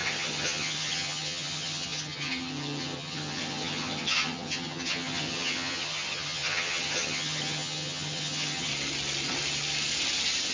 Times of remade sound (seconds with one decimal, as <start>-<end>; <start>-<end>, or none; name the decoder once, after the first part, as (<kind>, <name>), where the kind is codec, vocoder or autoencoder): 0.0-8.7 (vocoder, HiFi-GAN)

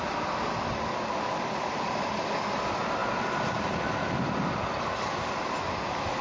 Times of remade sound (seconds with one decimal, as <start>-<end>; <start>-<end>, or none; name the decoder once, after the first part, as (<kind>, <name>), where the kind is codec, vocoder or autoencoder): none

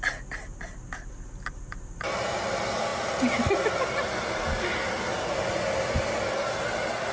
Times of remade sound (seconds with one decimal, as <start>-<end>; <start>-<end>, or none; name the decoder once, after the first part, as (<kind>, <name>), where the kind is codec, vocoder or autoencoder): none

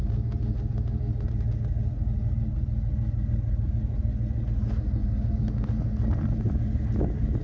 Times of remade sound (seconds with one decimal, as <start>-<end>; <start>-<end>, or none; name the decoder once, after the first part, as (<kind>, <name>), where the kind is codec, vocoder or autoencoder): none